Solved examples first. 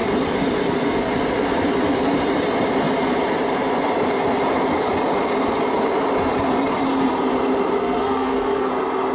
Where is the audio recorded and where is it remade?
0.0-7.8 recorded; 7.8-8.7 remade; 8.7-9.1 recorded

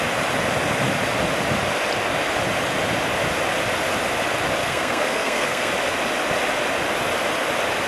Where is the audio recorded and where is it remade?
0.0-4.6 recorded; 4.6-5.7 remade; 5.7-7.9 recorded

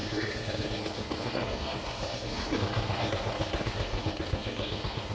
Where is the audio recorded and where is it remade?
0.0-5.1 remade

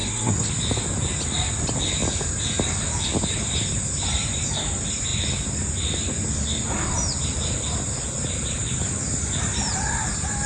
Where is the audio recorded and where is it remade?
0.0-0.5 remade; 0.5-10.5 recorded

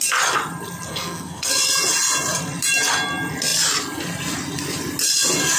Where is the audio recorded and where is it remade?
0.0-0.9 recorded; 0.9-1.5 remade; 1.5-5.6 recorded

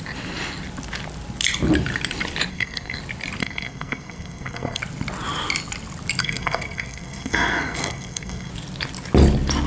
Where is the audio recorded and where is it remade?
0.0-2.5 recorded; 2.5-3.0 remade; 3.0-3.4 recorded; 3.4-4.8 remade; 4.8-6.2 recorded; 6.2-8.5 remade; 8.5-9.7 recorded

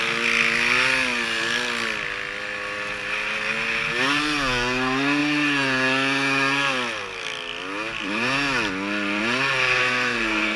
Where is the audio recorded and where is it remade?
0.0-9.8 recorded; 9.8-10.6 remade